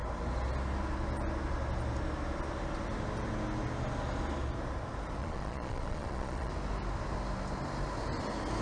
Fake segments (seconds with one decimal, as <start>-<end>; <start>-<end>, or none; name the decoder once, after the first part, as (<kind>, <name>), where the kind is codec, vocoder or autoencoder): 5.2-6.5 (vocoder, Vocos)